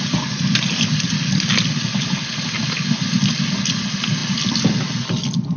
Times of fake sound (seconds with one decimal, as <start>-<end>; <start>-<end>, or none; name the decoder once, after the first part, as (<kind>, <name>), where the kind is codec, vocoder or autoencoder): none